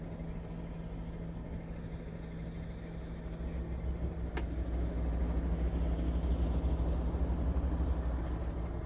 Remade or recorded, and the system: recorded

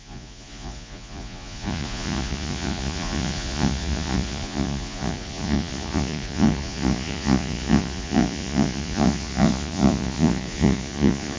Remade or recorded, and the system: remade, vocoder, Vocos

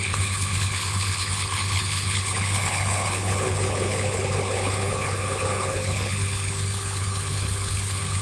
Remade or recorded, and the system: remade, codec, HILCodec